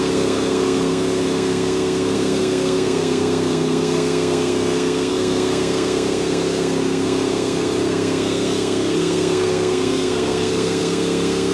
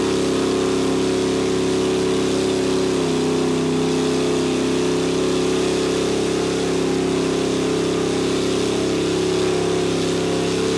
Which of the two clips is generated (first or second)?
first